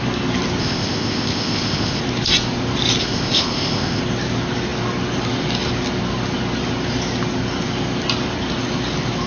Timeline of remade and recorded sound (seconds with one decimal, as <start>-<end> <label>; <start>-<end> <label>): 0.0-0.6 recorded; 0.6-2.0 remade; 2.0-3.0 recorded; 3.0-4.0 remade; 4.0-9.3 recorded